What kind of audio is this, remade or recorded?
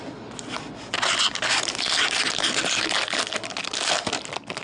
recorded